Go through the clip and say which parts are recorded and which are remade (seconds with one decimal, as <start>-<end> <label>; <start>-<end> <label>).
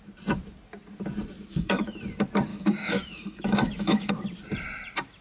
0.0-1.5 recorded; 1.5-2.0 remade; 2.0-2.5 recorded; 2.5-4.1 remade; 4.1-5.2 recorded